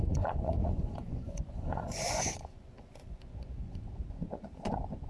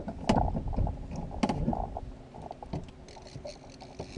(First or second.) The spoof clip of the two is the first